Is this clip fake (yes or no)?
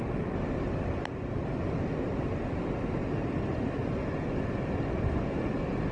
yes